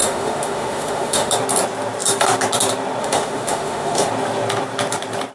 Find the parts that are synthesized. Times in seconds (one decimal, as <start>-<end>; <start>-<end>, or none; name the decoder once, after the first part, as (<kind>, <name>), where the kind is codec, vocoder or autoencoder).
0.0-1.3 (autoencoder, DAC-VAE); 3.0-4.1